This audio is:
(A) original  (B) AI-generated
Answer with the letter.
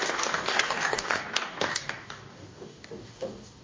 B